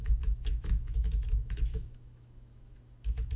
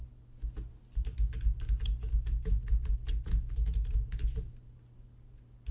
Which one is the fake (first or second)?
first